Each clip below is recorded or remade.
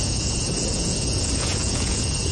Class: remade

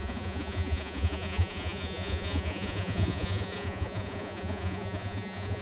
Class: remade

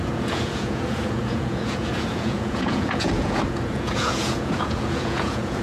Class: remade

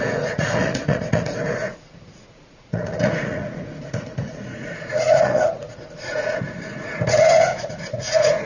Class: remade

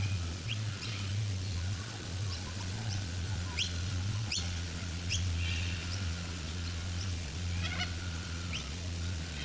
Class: remade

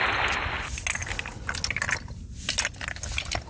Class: recorded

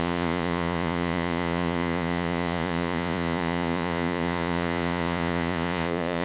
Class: remade